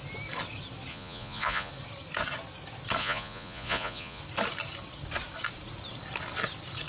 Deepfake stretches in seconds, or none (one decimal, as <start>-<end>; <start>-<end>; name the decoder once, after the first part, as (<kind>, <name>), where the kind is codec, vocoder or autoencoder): 0.9-1.7 (vocoder, Vocos); 3.0-4.2